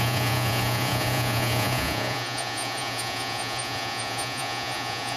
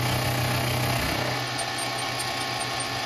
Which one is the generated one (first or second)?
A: first